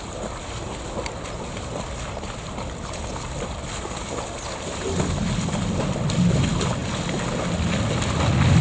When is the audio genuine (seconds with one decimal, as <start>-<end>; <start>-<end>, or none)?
0.0-8.6